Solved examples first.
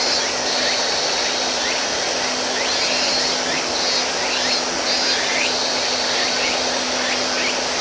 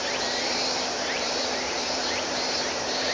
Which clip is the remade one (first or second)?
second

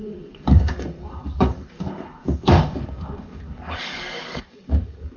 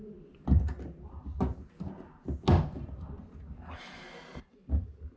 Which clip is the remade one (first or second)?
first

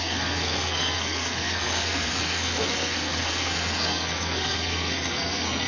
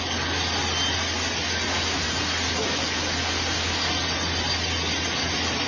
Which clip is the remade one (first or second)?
first